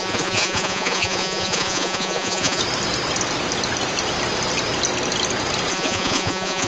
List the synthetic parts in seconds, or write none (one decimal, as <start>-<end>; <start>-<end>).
0.0-2.6; 5.7-6.7